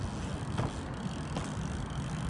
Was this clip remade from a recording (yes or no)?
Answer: no